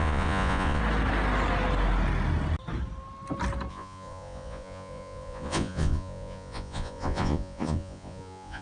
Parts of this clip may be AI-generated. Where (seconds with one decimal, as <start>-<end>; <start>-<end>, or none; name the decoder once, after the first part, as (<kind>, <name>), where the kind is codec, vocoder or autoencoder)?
0.0-0.8 (vocoder, Vocos); 3.7-8.6